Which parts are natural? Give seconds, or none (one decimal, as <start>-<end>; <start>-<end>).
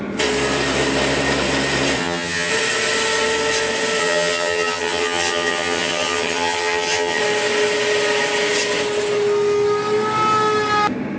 0.0-2.0; 2.5-4.0; 7.2-11.2